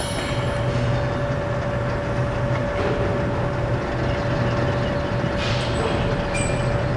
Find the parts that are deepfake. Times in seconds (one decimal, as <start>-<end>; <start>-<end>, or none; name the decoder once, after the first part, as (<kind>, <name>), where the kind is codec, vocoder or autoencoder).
none